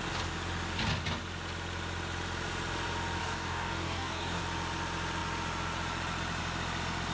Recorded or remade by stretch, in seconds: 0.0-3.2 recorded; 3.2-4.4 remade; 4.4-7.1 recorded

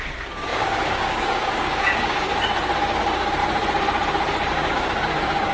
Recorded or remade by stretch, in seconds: 0.0-2.3 remade; 2.3-3.0 recorded; 3.0-3.4 remade; 3.4-4.5 recorded; 4.5-5.5 remade

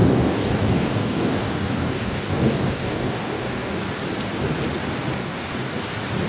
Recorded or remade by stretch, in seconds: 0.0-3.8 remade; 3.8-5.2 recorded; 5.2-5.8 remade; 5.8-6.3 recorded

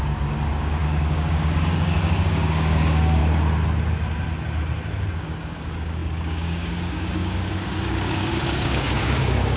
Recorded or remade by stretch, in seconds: 0.0-3.2 remade; 3.2-5.1 recorded; 5.1-9.6 remade